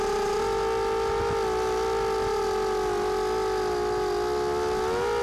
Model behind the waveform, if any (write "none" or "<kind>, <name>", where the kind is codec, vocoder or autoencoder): none